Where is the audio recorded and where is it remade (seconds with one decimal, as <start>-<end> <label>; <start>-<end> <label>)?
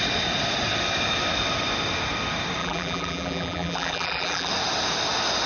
0.0-2.6 recorded; 2.6-4.5 remade; 4.5-5.5 recorded